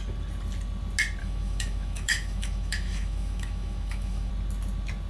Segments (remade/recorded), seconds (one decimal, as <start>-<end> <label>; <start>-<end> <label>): 0.0-1.2 recorded; 1.2-4.3 remade; 4.3-5.1 recorded